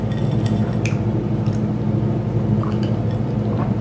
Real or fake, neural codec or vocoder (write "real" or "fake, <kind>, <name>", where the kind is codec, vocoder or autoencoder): real